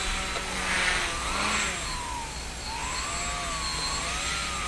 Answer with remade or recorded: recorded